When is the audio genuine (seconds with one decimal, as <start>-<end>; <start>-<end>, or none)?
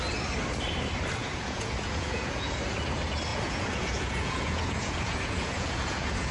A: 0.0-1.2; 2.5-3.3